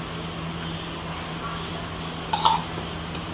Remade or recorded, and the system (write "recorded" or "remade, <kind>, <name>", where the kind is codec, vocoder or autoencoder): recorded